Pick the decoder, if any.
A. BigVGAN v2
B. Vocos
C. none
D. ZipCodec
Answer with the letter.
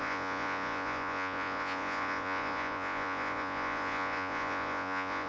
B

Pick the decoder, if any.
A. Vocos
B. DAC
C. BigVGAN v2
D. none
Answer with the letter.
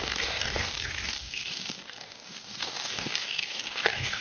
B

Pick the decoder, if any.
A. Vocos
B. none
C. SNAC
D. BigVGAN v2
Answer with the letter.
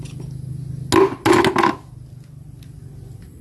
B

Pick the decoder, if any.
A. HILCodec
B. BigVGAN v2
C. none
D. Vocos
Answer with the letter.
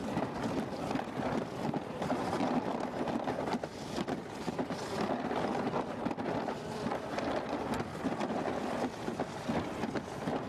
C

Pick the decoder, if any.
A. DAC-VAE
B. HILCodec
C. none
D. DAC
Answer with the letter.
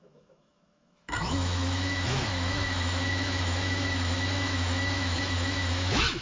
A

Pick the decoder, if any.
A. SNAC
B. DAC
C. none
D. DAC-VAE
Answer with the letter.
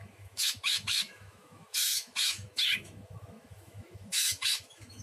D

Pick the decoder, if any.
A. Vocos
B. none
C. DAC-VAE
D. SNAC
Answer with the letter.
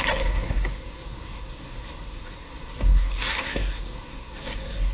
D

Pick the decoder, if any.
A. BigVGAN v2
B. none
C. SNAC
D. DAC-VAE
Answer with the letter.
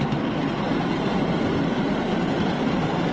B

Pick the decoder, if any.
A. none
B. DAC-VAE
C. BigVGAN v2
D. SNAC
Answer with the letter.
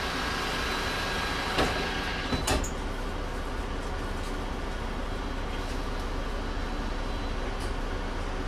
A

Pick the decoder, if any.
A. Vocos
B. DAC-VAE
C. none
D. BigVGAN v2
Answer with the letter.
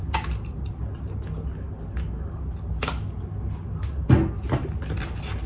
C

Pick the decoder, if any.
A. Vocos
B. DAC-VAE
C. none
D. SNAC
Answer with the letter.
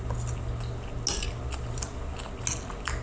C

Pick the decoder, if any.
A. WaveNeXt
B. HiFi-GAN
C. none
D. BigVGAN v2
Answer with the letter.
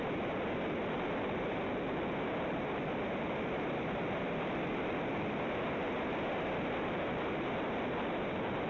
C